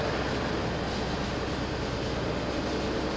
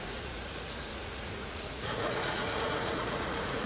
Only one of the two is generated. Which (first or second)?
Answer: second